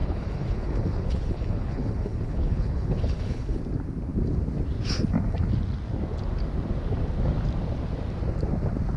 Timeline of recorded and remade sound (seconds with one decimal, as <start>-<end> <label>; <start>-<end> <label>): 0.0-3.6 remade; 3.6-9.0 recorded